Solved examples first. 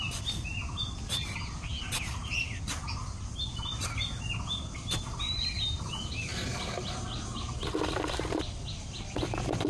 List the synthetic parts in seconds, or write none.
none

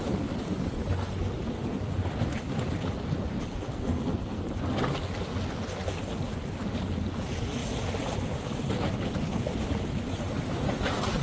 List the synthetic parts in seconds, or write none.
3.7-4.4 (codec, SNAC)

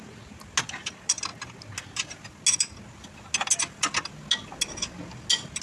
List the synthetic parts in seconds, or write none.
none

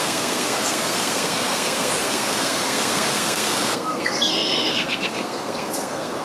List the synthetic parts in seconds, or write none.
0.0-6.2 (codec, SNAC)

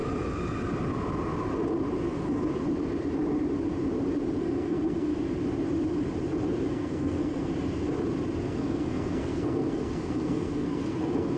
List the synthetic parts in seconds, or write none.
4.4-5.1 (codec, SNAC); 6.7-7.5; 8.4-11.4

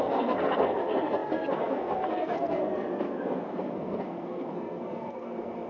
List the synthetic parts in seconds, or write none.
0.0-5.7 (codec, SNAC)

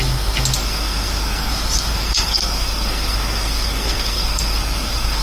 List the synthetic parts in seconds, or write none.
0.6-1.5 (codec, SNAC); 1.9-5.2